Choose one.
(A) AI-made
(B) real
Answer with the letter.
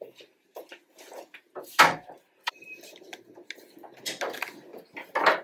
B